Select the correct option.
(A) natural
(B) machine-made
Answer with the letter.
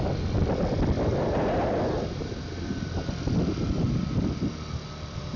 A